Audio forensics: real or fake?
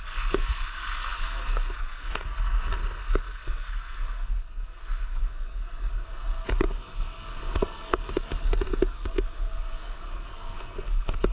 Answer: fake